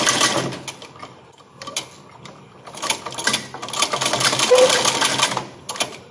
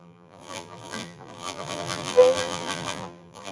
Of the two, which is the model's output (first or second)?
second